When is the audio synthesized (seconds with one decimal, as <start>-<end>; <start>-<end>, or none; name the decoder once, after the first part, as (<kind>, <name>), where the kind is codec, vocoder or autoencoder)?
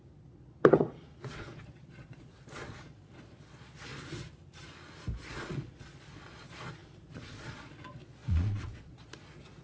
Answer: 0.0-3.9 (vocoder, Vocos); 5.3-9.6